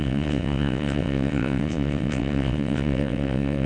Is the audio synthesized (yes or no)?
yes